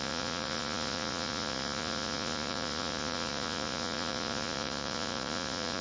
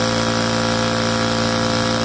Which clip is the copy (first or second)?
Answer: first